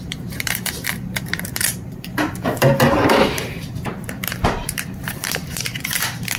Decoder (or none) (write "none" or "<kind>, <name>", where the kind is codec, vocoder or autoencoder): vocoder, BigVGAN v2